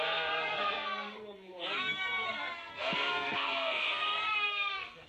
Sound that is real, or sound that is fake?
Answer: fake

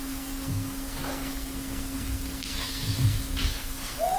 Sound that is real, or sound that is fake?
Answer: fake